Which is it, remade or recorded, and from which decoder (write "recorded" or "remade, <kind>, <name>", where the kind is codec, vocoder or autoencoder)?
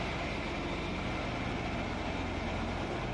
recorded